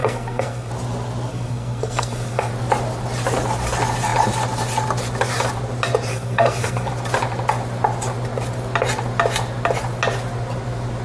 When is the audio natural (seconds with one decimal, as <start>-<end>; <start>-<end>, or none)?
0.7-1.3; 2.5-6.1; 6.9-11.0